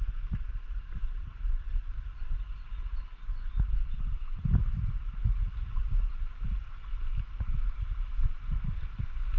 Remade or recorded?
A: recorded